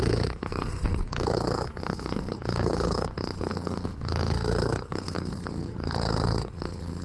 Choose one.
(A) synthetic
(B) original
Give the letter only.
A